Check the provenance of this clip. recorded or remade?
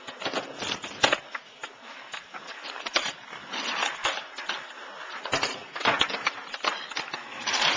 recorded